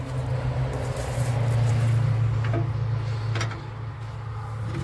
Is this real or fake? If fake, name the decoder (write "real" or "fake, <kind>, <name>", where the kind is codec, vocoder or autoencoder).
real